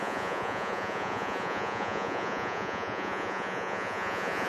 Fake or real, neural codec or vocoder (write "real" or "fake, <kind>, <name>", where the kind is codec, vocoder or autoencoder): fake, vocoder, Vocos